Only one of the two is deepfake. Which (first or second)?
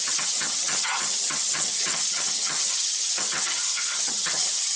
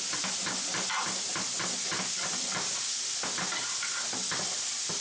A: first